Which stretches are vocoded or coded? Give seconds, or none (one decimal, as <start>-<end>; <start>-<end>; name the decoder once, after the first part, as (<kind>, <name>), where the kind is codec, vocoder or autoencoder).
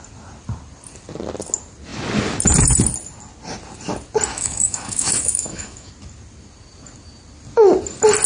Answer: 4.3-5.9 (autoencoder, DAC-VAE)